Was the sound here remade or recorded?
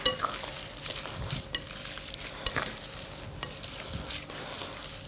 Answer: recorded